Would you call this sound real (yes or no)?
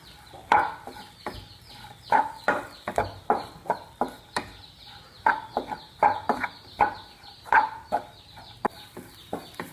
yes